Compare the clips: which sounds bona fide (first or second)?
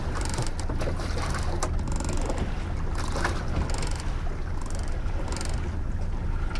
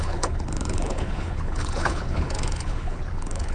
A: first